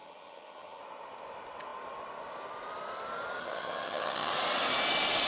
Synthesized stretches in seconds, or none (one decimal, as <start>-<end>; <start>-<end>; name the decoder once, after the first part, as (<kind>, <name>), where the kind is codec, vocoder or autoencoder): 0.0-0.8 (vocoder, HiFi-GAN); 3.4-4.3